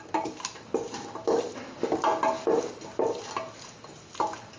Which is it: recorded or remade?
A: recorded